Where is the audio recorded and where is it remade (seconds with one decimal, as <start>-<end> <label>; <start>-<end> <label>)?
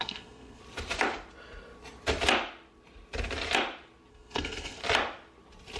0.0-0.6 remade; 0.6-4.1 recorded; 4.1-4.8 remade; 4.8-5.8 recorded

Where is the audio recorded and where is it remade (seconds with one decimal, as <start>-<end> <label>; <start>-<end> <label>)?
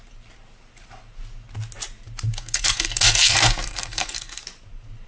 0.0-2.4 recorded; 2.4-4.4 remade; 4.4-5.1 recorded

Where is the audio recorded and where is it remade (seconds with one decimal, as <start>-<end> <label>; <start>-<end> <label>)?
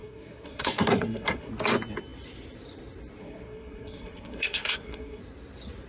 0.0-1.5 remade; 1.5-3.2 recorded; 3.2-5.2 remade; 5.2-5.9 recorded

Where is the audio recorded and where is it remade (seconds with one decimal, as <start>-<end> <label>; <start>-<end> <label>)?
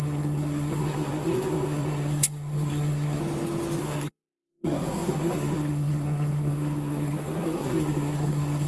0.0-3.2 remade; 3.2-3.8 recorded; 3.8-8.7 remade